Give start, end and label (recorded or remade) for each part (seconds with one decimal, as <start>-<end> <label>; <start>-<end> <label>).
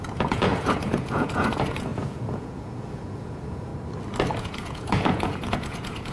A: 0.0-3.7 remade; 3.7-4.4 recorded; 4.4-6.1 remade